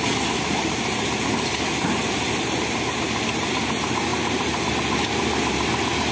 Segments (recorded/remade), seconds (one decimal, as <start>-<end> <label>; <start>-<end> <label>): 0.0-6.1 recorded